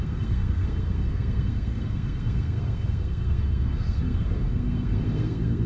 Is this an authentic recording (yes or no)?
no